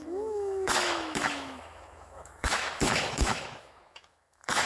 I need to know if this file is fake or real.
fake